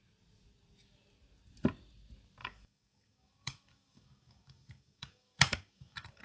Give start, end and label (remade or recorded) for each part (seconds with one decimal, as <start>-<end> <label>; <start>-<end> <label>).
0.0-2.4 recorded; 2.4-6.2 remade